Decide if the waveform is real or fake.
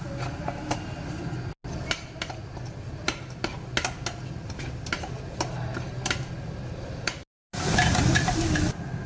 real